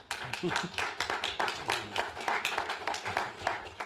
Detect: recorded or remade recorded